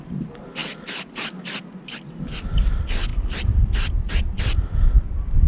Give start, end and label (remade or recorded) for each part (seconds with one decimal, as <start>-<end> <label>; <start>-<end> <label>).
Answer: 0.0-0.6 recorded; 0.6-1.3 remade; 1.3-3.1 recorded; 3.1-4.1 remade; 4.1-5.5 recorded